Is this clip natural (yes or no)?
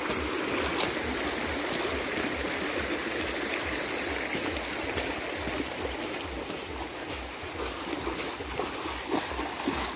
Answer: yes